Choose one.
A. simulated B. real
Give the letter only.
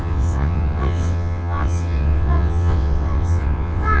A